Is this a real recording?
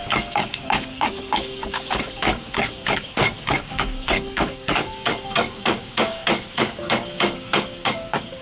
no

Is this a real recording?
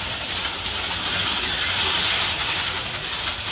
yes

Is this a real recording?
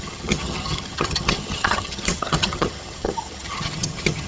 no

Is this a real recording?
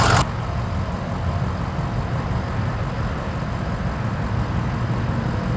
yes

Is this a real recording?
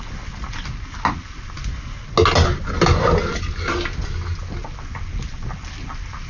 yes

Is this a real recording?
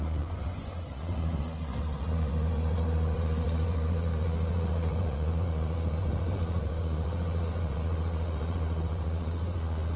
no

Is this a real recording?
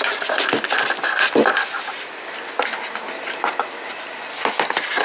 yes